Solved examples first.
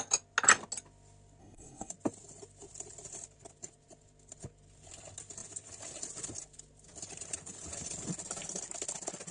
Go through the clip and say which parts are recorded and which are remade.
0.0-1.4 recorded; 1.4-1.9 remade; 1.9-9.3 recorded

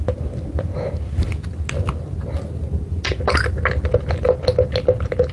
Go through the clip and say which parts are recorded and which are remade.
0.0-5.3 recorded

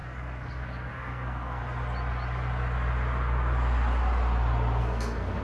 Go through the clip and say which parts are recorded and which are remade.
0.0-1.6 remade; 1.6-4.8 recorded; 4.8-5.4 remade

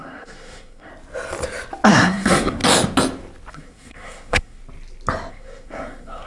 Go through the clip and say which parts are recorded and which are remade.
0.0-0.9 remade; 0.9-1.9 recorded; 1.9-2.6 remade; 2.6-3.5 recorded; 3.5-4.6 remade; 4.6-5.3 recorded; 5.3-6.3 remade